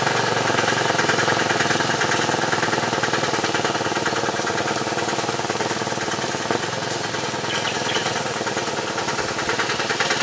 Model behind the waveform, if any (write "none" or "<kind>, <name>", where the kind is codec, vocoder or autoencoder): none